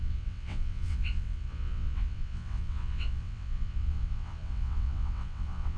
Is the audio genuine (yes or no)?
no